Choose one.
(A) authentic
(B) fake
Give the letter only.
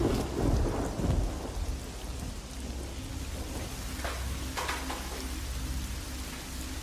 A